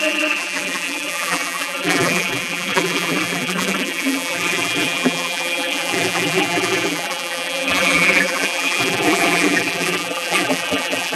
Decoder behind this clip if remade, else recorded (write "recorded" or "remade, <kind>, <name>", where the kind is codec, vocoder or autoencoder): remade, vocoder, BigVGAN v2